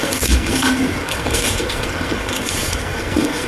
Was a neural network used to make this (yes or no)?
yes